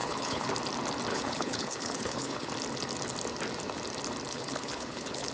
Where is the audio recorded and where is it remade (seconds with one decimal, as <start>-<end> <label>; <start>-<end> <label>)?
0.0-0.5 remade; 0.5-1.1 recorded; 1.1-2.5 remade; 2.5-4.3 recorded; 4.3-5.3 remade